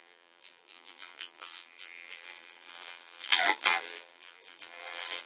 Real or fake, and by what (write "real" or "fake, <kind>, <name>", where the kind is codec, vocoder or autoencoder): fake, vocoder, BigVGAN v2